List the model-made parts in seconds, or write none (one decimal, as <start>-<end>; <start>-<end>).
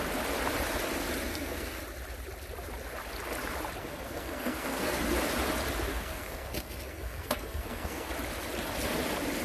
1.3-1.8; 3.8-5.0; 5.9-8.1